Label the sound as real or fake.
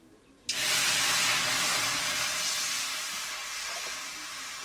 real